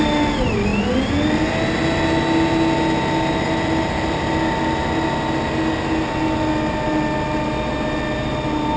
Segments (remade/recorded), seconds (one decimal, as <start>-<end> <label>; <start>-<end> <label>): 0.0-8.8 recorded